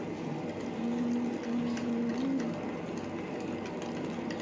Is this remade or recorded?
recorded